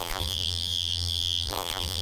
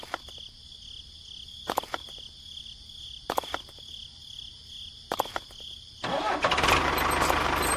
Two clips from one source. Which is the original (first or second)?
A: second